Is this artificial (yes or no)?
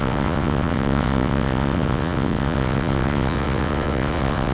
yes